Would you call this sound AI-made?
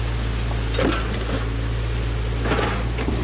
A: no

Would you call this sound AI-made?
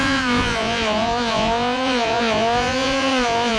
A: yes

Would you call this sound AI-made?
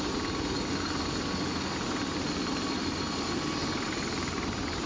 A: no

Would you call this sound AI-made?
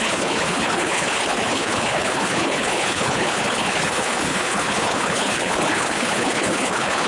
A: yes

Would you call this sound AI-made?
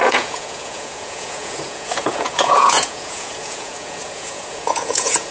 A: yes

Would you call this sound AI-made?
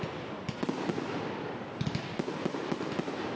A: no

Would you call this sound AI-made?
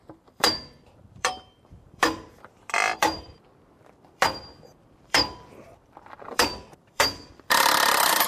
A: yes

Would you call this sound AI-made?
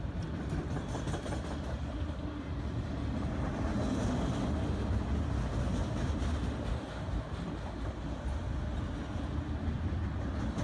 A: no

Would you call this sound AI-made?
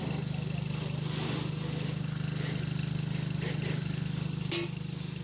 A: no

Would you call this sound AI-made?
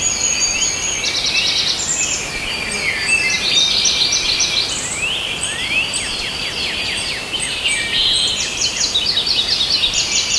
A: no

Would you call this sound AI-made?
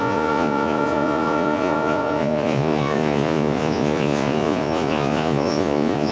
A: yes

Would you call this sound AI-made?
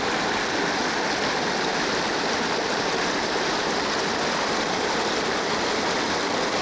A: no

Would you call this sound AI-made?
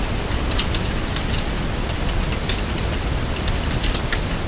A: yes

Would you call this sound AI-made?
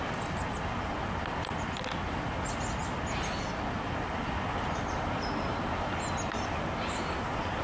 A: no